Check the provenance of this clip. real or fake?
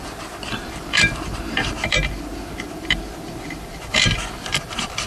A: fake